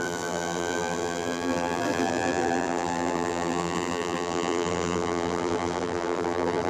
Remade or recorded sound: remade